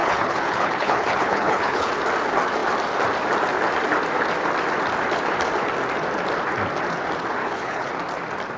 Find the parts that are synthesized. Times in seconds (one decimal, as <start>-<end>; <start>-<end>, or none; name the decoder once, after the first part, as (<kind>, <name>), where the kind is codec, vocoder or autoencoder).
0.0-1.9 (codec, HILCodec); 7.4-7.9